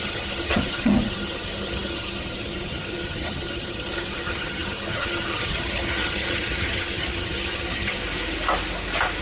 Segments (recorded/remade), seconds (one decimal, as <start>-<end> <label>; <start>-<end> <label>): 0.0-8.0 remade; 8.0-9.2 recorded